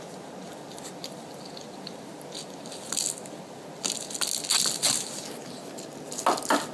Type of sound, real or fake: real